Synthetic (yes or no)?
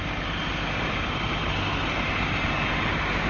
no